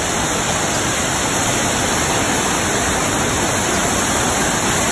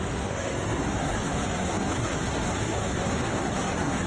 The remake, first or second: second